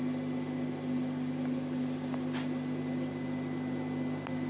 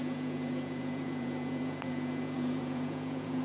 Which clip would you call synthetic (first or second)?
second